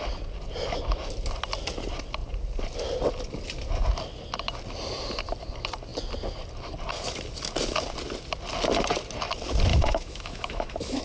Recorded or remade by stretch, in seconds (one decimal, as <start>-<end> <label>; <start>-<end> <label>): 0.0-9.7 recorded; 9.7-11.0 remade

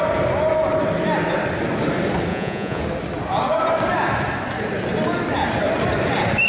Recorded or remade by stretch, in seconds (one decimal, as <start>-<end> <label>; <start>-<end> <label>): 0.0-2.3 recorded; 2.3-2.8 remade; 2.8-6.5 recorded

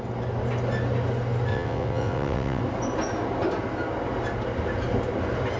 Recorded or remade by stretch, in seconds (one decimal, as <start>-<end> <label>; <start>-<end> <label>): 0.0-1.5 recorded; 1.5-2.6 remade; 2.6-5.6 recorded

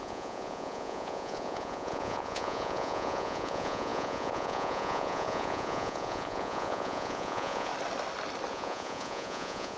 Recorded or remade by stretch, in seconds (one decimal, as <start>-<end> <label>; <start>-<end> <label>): 0.0-7.7 remade; 7.7-8.5 recorded; 8.5-9.8 remade